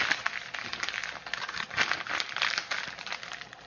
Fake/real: real